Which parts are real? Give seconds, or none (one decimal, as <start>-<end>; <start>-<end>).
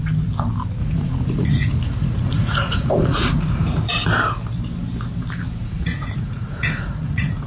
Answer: 0.0-0.8; 3.9-5.6